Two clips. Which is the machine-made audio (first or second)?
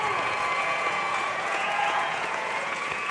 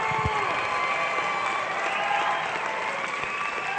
first